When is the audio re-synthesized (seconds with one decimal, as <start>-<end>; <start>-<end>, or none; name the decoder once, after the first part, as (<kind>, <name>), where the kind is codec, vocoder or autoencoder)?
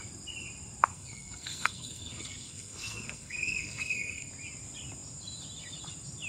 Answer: 0.9-4.3 (codec, SNAC)